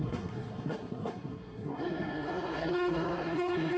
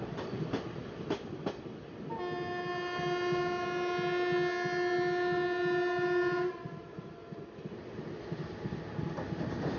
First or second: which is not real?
first